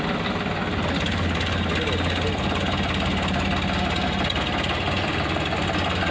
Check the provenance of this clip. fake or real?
real